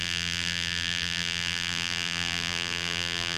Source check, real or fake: fake